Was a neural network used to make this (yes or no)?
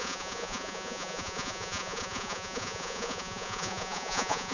yes